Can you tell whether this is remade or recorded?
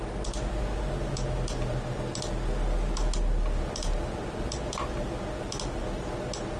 recorded